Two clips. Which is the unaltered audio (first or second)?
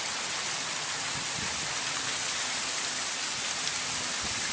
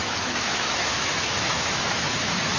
first